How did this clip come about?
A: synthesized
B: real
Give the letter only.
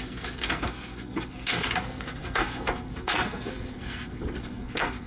A